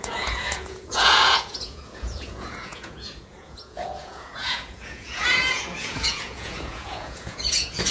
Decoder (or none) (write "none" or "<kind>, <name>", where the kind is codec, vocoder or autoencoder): vocoder, Vocos